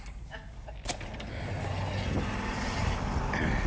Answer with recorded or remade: recorded